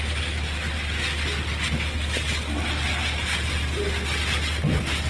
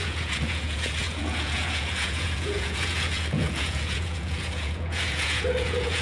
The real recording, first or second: first